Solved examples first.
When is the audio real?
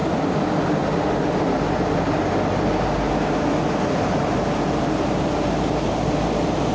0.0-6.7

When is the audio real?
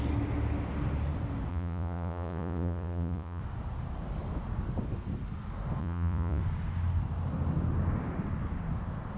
0.0-1.5; 3.4-5.8; 6.4-9.2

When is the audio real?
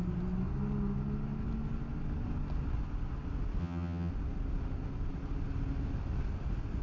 0.0-3.6; 4.1-6.8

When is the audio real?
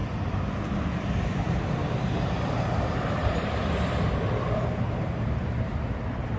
0.0-1.8; 5.6-6.4